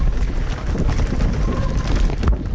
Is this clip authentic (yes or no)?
yes